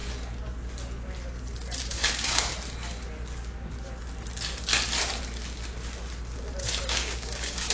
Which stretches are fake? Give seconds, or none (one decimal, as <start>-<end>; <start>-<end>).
1.8-2.5; 6.8-7.7

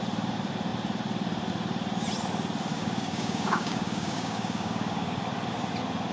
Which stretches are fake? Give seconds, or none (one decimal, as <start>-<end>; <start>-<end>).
2.7-5.2